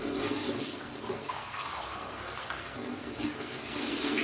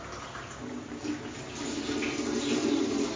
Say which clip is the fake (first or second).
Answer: first